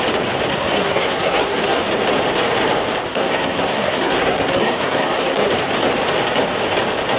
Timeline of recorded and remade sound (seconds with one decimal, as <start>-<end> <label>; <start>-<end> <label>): 0.0-0.5 recorded; 0.5-1.8 remade; 1.8-3.1 recorded; 3.1-5.5 remade; 5.5-7.2 recorded